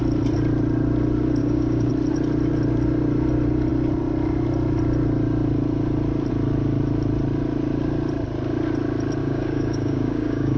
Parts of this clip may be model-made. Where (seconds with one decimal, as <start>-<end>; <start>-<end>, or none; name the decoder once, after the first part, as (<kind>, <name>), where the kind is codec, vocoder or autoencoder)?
1.4-1.9 (codec, DAC); 9.2-10.6